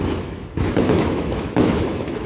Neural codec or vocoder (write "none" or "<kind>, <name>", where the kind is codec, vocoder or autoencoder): autoencoder, DAC-VAE